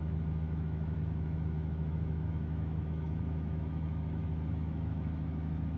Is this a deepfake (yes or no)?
yes